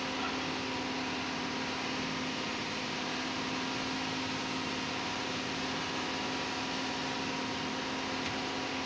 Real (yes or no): yes